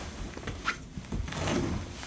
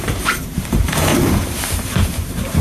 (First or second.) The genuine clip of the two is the first